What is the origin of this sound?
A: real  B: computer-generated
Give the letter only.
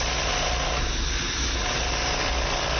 A